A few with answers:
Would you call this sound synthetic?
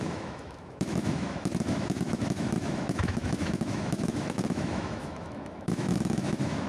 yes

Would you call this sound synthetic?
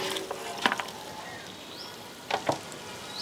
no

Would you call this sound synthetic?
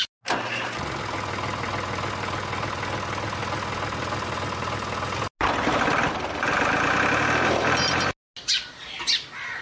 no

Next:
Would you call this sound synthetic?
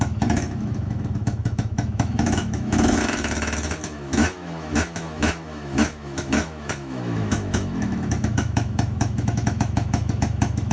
yes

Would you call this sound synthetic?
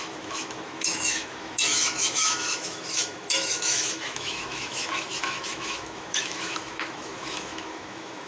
yes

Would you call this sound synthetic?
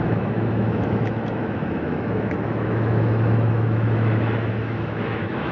yes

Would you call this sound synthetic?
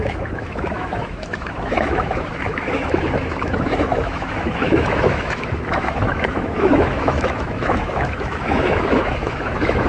yes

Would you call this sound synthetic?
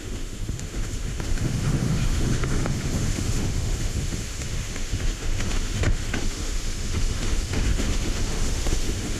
yes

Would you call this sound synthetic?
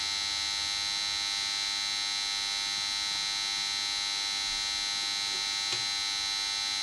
no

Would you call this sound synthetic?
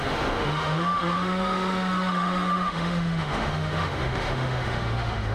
yes